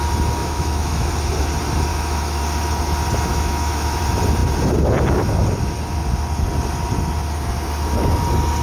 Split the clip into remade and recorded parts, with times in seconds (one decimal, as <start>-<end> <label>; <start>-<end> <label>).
0.0-0.4 recorded; 0.4-1.1 remade; 1.1-1.9 recorded; 1.9-2.4 remade; 2.4-3.3 recorded; 3.3-4.0 remade; 4.0-8.6 recorded